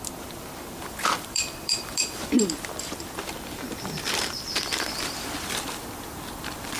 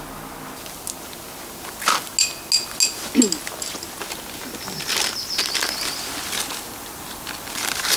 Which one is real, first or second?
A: second